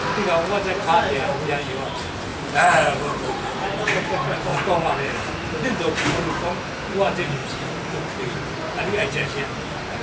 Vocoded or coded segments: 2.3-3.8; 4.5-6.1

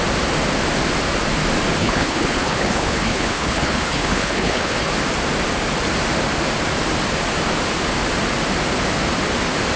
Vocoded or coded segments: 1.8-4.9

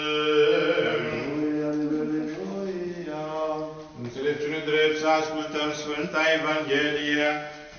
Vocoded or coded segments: 7.0-7.8